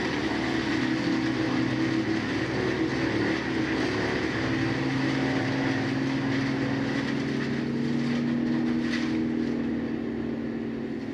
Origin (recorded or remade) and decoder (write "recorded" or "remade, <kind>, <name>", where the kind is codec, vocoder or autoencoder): recorded